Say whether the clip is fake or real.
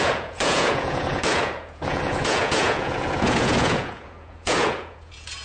fake